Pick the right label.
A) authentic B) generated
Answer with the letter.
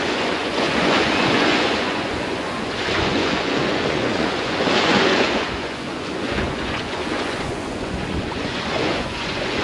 B